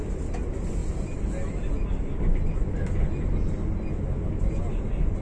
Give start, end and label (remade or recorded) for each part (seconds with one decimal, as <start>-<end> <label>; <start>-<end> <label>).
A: 0.0-5.2 recorded